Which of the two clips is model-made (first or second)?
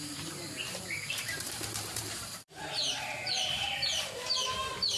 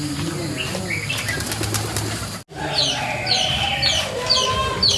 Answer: first